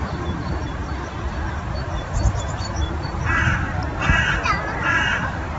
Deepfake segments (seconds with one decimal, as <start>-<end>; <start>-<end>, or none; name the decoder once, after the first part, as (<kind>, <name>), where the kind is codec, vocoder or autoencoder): 0.0-5.6 (vocoder, BigVGAN v2)